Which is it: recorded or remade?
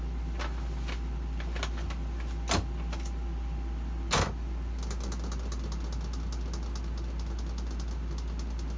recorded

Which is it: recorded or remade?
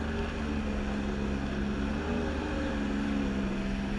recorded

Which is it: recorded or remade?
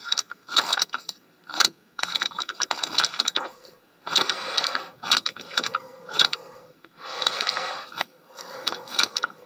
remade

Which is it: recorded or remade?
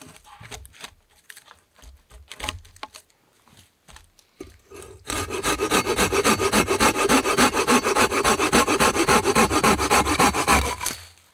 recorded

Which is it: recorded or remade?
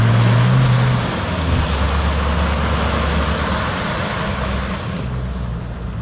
recorded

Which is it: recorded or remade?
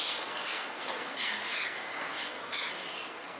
remade